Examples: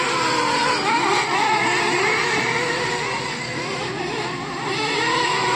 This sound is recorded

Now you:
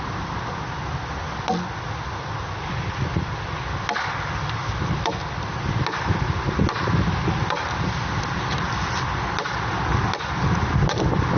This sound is recorded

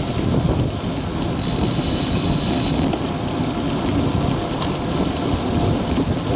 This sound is recorded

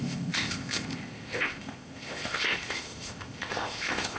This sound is remade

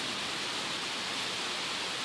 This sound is recorded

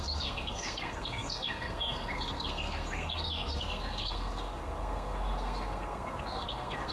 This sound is remade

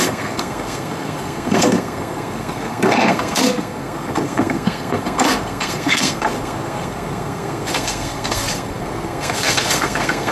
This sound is remade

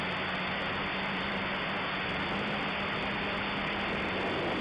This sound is recorded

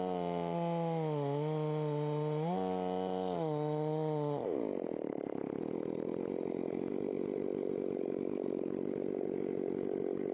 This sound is recorded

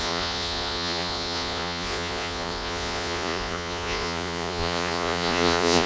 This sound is remade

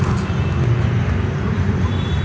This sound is recorded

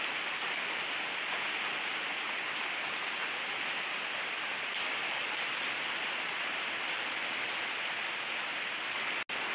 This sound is recorded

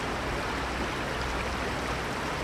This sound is recorded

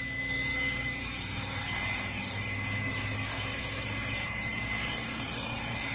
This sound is remade